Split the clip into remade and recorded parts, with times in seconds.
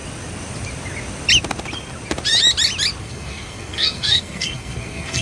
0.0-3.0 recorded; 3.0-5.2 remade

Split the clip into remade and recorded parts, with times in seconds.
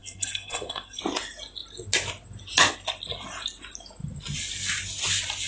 0.0-1.0 remade; 1.0-5.5 recorded